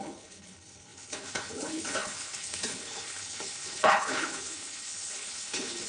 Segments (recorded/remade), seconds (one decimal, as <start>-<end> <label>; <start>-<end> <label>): 0.0-5.9 remade